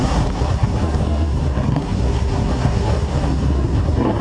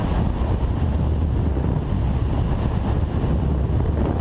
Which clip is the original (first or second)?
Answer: second